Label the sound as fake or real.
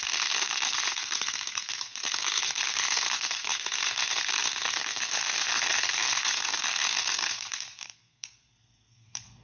fake